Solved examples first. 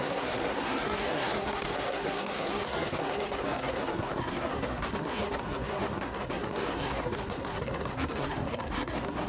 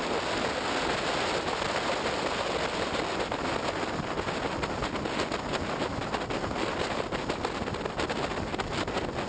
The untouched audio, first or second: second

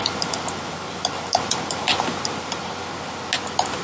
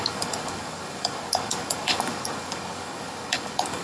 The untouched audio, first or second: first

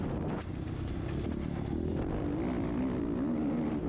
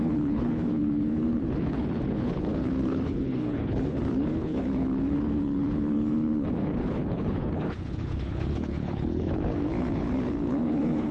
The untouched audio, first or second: first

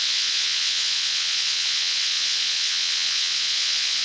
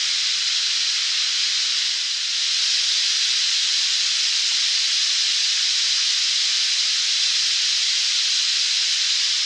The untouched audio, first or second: second